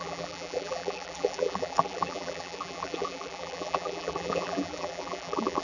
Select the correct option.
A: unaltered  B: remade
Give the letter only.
B